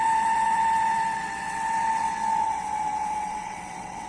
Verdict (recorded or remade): remade